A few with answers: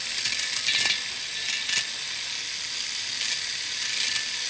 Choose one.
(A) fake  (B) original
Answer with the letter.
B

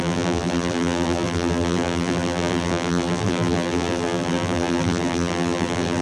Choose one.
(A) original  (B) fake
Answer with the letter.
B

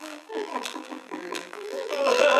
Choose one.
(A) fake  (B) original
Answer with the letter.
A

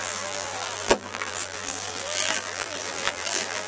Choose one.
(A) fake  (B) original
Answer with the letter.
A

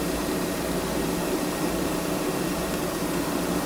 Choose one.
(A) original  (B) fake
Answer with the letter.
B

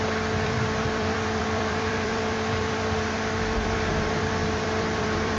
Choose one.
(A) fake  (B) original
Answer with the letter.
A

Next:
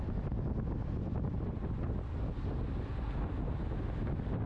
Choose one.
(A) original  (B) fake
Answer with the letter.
A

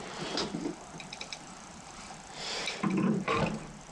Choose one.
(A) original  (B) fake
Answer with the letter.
B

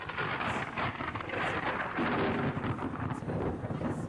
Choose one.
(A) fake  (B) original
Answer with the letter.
A